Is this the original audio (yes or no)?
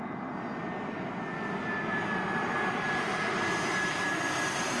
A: yes